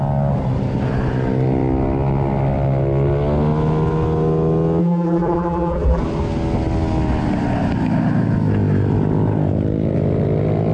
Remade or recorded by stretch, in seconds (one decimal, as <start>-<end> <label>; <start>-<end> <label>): 0.0-4.8 recorded; 4.8-6.0 remade; 6.0-10.7 recorded